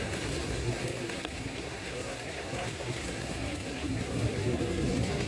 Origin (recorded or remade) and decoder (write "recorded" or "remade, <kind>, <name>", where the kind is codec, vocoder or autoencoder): remade, codec, SNAC